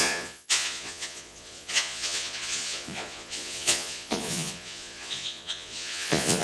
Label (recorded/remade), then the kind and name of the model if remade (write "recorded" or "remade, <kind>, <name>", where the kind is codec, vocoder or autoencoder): remade, vocoder, Vocos